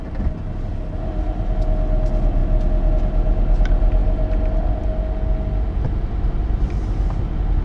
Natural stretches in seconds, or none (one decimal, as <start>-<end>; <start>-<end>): 0.0-7.6